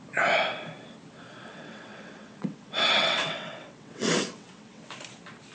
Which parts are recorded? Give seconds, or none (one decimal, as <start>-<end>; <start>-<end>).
0.0-1.5; 4.8-5.5